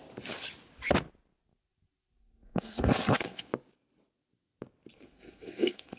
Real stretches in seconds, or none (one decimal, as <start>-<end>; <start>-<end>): 0.0-2.2; 3.5-4.9